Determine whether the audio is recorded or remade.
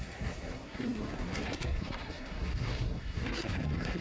remade